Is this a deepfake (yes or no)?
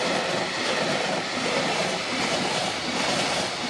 no